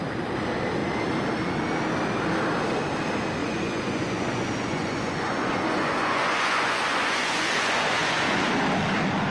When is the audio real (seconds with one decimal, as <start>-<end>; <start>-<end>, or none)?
0.0-3.4; 8.5-9.3